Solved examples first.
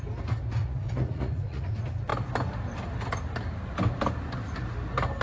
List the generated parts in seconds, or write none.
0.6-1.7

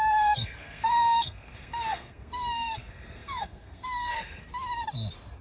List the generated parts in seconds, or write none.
0.0-4.5

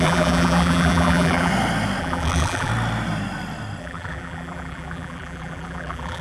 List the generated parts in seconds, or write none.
0.0-1.5; 2.0-2.7; 3.8-6.2